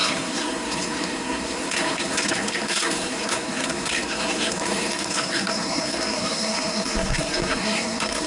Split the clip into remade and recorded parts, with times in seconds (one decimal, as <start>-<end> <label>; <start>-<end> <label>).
0.0-8.3 remade